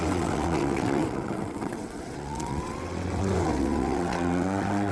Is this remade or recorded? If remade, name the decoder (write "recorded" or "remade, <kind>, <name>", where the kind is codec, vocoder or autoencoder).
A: remade, vocoder, WaveNeXt